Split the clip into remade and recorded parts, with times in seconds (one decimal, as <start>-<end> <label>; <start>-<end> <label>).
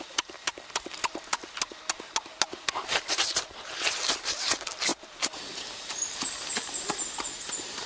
0.0-7.9 recorded